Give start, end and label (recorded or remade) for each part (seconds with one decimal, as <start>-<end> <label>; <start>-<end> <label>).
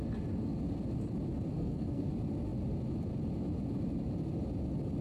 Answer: 0.0-1.5 recorded; 1.5-2.1 remade; 2.1-5.0 recorded